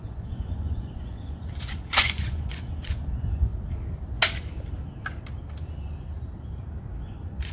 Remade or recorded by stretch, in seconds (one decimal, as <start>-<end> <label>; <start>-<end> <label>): 0.0-3.5 remade; 3.5-7.0 recorded; 7.0-7.5 remade